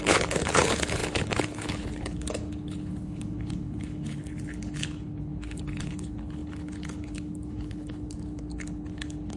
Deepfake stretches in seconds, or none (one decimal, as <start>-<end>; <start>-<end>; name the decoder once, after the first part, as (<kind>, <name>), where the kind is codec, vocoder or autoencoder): 0.0-9.4 (codec, HILCodec)